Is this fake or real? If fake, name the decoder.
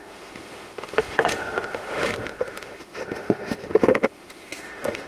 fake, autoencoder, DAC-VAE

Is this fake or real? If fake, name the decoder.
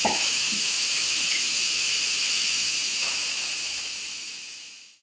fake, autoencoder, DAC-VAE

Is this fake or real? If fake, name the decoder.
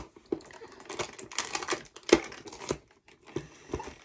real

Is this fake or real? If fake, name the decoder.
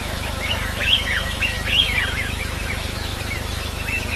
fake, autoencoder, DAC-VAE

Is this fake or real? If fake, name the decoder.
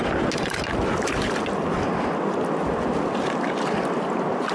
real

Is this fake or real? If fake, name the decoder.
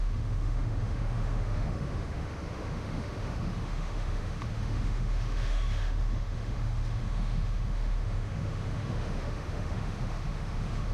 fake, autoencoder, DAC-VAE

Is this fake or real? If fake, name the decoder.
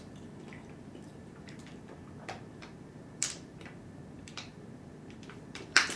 fake, vocoder, BigVGAN v2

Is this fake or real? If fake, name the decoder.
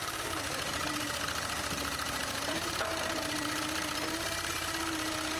fake, vocoder, BigVGAN v2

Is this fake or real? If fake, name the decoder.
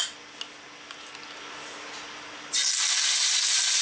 real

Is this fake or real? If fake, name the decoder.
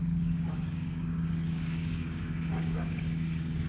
fake, codec, DAC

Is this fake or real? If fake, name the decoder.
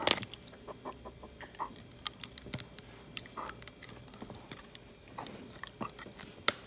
real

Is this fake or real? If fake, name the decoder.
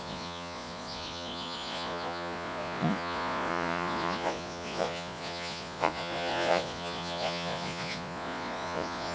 fake, vocoder, Vocos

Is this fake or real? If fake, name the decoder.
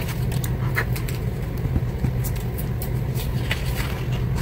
real